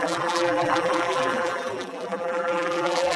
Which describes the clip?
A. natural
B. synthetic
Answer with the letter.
B